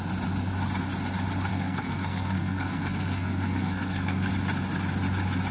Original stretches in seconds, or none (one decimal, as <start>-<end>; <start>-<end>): 0.0-1.5; 4.3-5.5